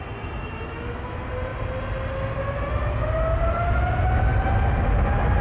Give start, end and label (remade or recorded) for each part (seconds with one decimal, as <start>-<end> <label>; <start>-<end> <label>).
0.0-5.4 recorded